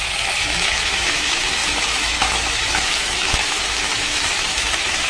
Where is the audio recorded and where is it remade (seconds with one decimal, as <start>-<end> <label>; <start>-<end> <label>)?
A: 0.0-5.1 remade